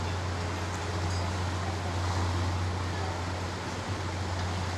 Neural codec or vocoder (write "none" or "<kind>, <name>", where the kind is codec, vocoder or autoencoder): none